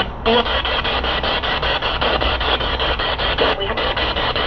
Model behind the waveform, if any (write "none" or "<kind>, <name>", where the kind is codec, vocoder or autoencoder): codec, DAC